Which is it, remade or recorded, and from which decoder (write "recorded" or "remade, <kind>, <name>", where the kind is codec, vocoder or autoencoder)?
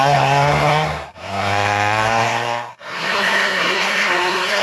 remade, codec, SNAC